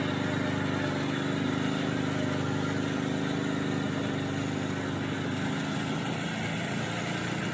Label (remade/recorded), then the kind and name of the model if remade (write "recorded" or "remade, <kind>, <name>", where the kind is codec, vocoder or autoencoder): recorded